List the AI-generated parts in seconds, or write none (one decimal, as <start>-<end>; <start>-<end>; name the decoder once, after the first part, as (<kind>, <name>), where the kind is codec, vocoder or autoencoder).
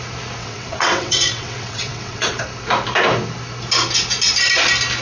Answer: 0.4-2.4 (vocoder, WaveNeXt)